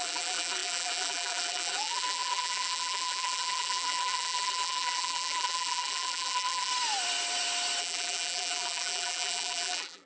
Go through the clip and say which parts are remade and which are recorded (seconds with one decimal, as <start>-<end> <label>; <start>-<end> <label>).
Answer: 0.0-6.7 remade; 6.7-7.8 recorded; 7.8-10.1 remade